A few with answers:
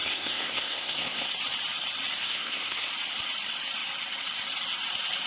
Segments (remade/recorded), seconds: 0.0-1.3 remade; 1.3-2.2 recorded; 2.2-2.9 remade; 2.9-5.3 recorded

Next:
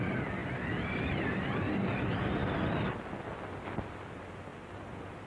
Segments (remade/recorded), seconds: 0.0-5.3 recorded